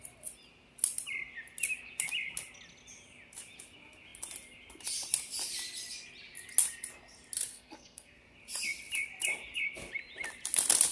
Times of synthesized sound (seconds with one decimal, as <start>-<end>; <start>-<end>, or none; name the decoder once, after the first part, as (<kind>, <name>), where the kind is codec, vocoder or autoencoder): 7.5-8.2 (codec, SNAC)